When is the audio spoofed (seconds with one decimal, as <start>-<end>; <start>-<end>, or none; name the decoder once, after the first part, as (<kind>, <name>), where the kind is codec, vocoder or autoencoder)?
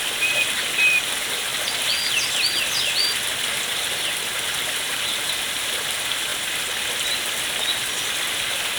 none